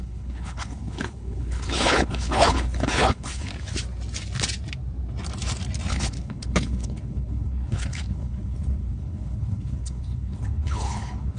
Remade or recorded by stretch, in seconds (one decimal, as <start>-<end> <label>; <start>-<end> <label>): 0.0-3.5 remade; 3.5-5.9 recorded; 5.9-11.4 remade